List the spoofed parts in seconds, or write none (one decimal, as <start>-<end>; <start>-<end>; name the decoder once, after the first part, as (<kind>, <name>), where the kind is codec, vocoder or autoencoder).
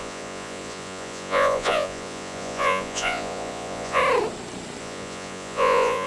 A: 0.0-4.0 (vocoder, Vocos); 4.8-6.1